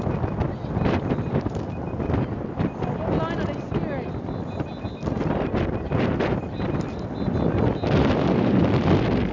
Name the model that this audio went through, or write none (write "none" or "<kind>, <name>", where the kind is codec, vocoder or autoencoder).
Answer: none